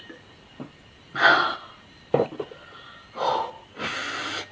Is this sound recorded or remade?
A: recorded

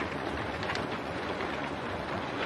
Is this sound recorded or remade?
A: remade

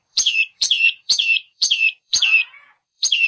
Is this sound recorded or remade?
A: remade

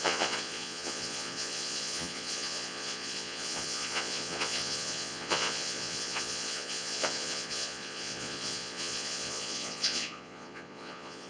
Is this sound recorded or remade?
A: remade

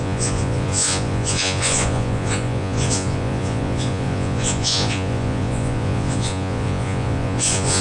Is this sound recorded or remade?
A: remade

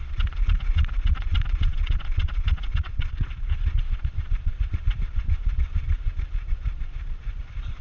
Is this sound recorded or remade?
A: remade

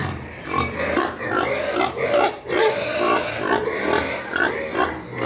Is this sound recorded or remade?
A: recorded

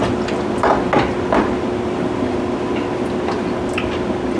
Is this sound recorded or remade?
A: recorded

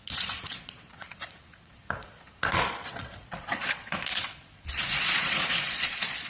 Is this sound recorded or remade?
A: remade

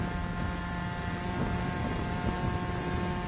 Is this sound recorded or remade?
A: recorded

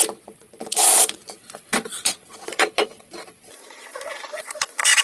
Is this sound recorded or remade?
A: remade